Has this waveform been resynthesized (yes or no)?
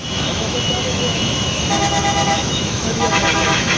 yes